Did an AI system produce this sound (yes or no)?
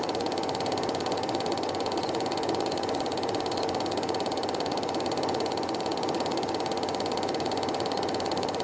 yes